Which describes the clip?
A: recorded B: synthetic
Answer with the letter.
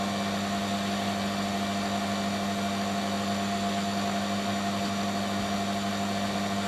A